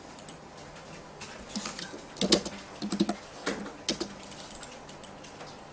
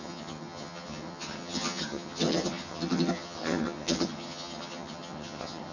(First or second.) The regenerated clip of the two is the second